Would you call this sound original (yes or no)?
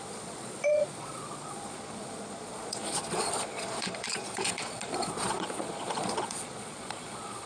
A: no